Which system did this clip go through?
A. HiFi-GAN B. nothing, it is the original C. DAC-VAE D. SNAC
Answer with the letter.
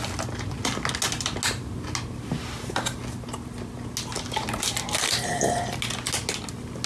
B